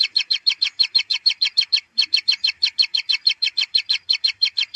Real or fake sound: fake